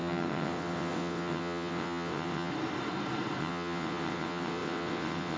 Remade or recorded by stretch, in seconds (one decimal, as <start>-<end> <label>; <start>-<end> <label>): 0.0-2.5 remade; 2.5-3.4 recorded; 3.4-5.4 remade